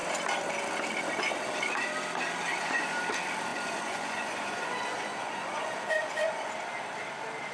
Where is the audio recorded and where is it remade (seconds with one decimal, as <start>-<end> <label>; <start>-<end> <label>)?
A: 0.0-2.5 recorded; 2.5-3.0 remade; 3.0-3.5 recorded; 3.5-6.5 remade; 6.5-7.5 recorded